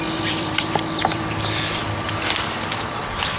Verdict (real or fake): fake